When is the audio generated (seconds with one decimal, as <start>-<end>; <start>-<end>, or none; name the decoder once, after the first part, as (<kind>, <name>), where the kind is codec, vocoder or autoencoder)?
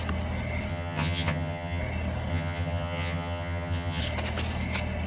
0.7-1.8 (vocoder, HiFi-GAN); 2.3-4.0